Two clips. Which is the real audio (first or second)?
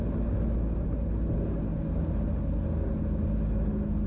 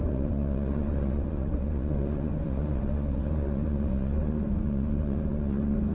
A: first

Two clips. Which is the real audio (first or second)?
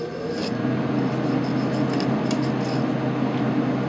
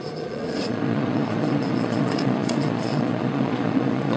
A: first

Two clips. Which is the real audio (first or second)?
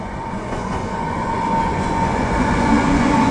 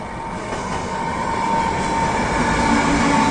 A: second